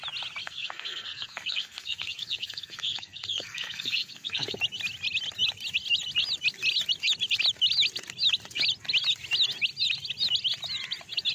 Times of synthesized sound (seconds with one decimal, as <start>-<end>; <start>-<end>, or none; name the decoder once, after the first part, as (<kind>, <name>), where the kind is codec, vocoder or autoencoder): 0.4-4.6 (codec, SNAC)